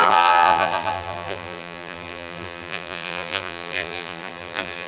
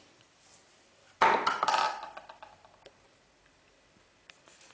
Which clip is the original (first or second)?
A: second